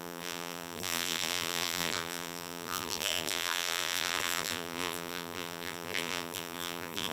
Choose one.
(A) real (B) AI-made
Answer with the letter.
B